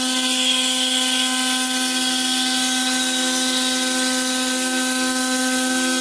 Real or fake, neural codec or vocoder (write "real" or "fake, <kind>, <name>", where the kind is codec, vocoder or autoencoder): real